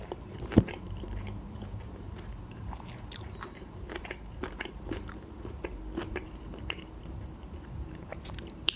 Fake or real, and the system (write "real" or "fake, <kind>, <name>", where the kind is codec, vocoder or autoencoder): fake, vocoder, BigVGAN v2